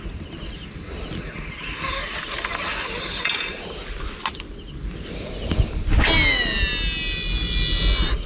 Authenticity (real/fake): real